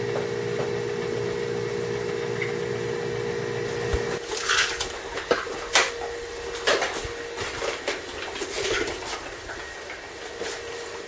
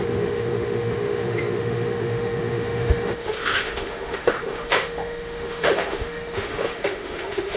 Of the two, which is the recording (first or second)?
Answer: first